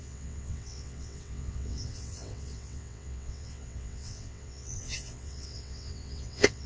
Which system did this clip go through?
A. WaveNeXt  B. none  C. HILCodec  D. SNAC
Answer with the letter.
A